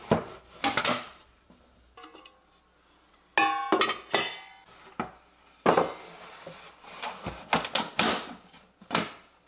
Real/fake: real